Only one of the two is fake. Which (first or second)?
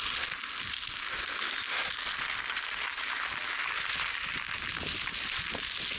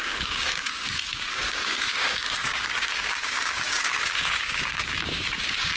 second